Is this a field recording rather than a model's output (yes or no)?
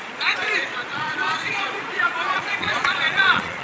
no